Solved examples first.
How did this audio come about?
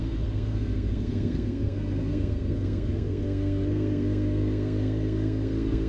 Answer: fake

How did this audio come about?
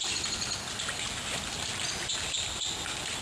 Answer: real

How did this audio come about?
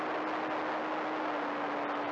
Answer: real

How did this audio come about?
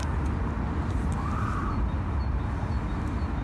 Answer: real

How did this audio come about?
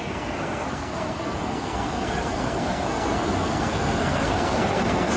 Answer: fake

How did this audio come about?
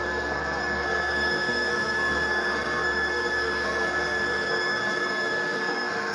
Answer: fake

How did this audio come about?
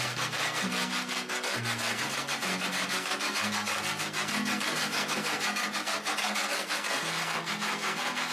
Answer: fake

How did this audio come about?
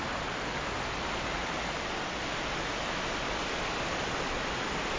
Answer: real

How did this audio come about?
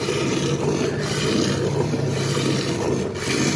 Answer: real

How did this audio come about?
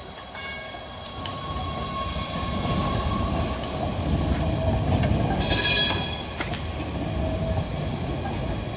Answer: real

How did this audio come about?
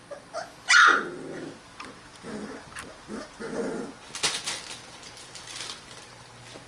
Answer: real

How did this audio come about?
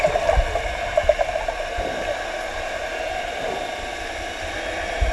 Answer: real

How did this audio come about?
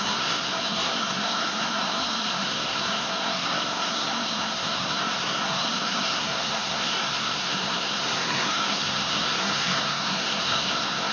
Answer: fake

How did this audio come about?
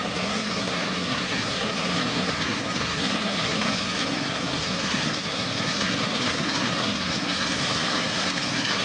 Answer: fake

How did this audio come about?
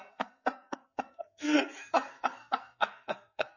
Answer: fake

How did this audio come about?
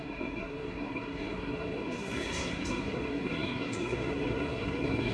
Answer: fake